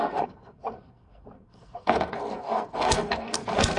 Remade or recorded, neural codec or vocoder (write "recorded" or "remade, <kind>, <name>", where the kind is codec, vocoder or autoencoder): remade, codec, SNAC